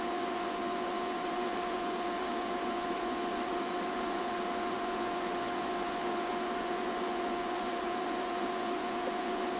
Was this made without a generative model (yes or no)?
no